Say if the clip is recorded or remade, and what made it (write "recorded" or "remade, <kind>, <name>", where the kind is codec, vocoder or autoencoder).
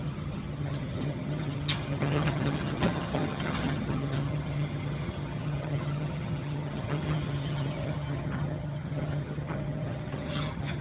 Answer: remade, vocoder, HiFi-GAN